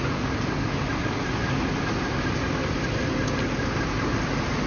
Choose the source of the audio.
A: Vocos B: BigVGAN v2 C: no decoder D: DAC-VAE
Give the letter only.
C